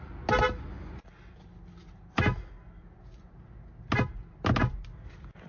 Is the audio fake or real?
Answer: real